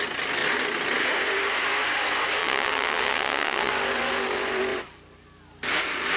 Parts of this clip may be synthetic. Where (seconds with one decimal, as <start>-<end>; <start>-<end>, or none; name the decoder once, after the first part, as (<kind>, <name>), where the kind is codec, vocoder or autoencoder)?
2.4-3.7 (vocoder, WaveNeXt)